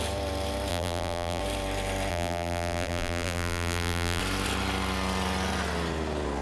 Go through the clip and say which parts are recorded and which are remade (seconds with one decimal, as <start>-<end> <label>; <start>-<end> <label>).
0.0-0.7 recorded; 0.7-1.4 remade; 1.4-2.1 recorded; 2.1-4.2 remade; 4.2-6.4 recorded